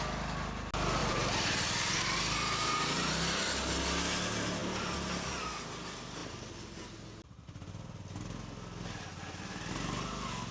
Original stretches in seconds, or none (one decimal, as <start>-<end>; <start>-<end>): 0.0-1.0; 3.1-10.5